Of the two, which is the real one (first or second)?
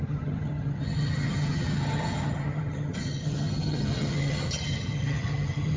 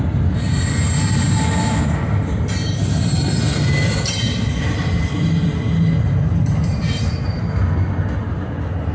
second